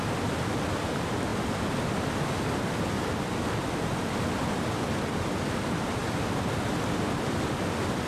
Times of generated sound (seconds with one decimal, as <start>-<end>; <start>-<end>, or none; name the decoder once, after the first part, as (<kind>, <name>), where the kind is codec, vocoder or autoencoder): 1.3-2.1 (vocoder, BigVGAN v2)